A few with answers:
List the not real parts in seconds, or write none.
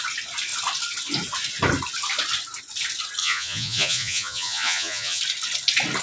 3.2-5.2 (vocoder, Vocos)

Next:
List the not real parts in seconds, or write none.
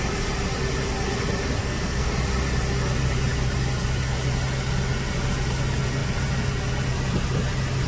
1.6-2.1 (codec, SNAC)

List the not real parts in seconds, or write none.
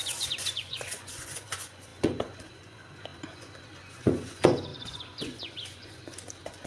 0.0-6.7 (vocoder, Vocos)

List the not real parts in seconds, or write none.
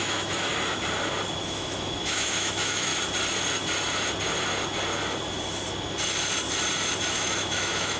0.0-0.5 (autoencoder, DAC-VAE); 1.5-2.9; 7.1-8.0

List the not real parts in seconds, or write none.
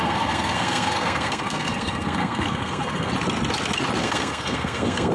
0.0-3.1 (codec, SNAC); 4.0-5.1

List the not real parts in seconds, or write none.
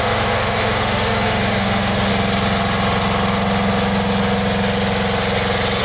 0.0-2.1 (autoencoder, DAC-VAE)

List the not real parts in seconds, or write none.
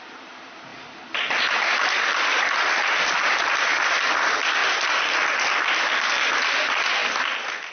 0.0-4.6 (vocoder, BigVGAN v2); 5.8-7.0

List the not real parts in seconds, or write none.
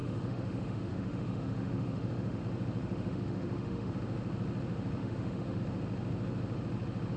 0.0-2.4 (autoencoder, DAC-VAE); 2.8-3.9; 5.0-5.6